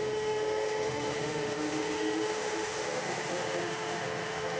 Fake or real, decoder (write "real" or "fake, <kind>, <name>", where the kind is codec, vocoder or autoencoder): fake, autoencoder, DAC-VAE